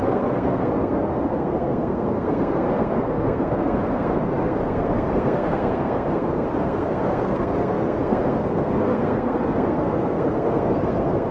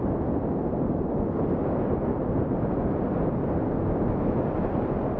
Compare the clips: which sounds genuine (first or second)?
second